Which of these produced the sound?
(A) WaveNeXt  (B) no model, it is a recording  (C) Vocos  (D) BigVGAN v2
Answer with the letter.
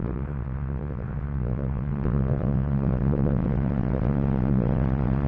A